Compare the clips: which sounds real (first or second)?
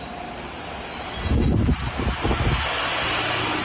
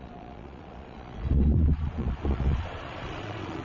first